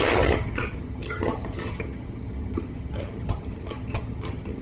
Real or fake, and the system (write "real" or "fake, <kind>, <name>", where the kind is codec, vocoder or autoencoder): fake, vocoder, HiFi-GAN